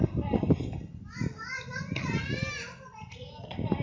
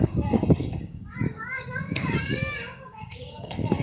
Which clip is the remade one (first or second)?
second